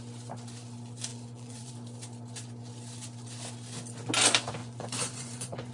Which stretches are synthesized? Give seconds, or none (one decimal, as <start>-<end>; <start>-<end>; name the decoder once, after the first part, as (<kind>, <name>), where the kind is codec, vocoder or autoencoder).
1.1-1.7 (vocoder, Vocos); 4.6-5.7